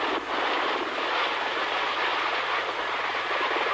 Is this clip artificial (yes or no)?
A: no